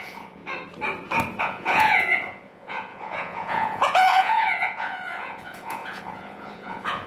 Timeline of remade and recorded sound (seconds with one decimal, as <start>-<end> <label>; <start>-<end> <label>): 0.0-0.4 remade; 0.4-1.4 recorded; 1.4-7.1 remade